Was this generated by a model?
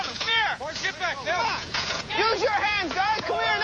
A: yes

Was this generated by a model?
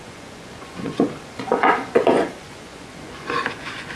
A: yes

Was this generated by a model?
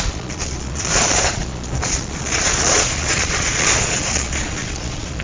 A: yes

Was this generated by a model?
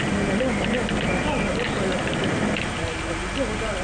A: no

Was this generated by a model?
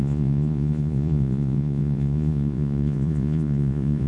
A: yes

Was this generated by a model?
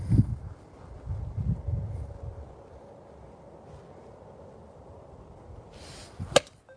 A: no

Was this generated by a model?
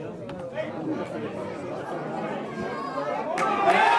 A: no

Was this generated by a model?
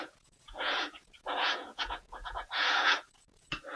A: yes